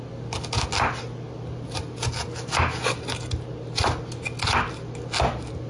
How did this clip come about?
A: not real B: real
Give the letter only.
B